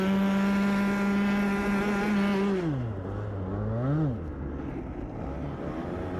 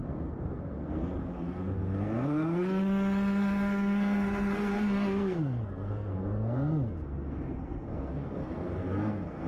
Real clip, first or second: first